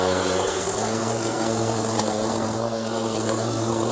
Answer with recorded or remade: remade